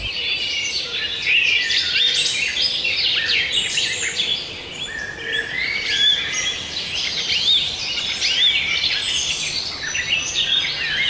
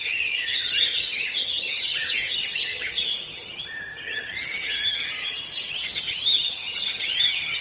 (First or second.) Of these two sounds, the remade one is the second